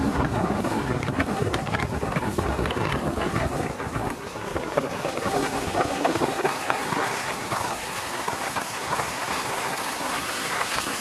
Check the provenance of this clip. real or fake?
fake